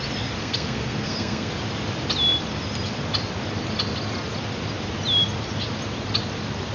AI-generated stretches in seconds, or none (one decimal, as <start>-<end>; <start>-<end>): 0.4-1.5